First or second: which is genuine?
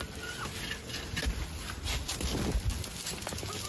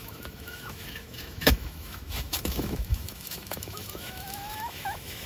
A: first